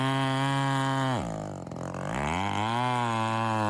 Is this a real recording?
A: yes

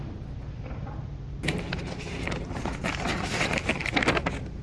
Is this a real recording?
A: yes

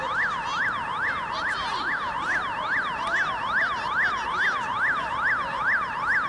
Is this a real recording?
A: yes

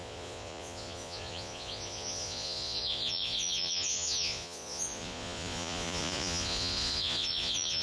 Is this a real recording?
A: no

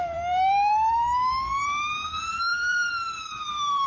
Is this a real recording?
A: no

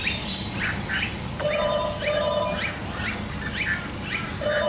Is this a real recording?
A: yes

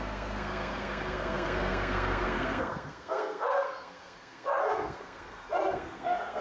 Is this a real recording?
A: no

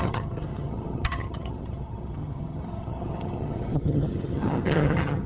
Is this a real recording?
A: no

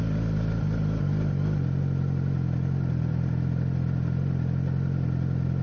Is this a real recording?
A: yes